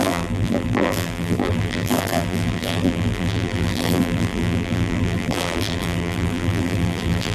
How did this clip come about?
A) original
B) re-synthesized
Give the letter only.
B